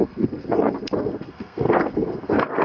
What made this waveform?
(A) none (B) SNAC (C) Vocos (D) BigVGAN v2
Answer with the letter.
B